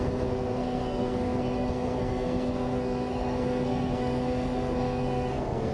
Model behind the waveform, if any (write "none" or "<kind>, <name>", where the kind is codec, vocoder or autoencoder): codec, SNAC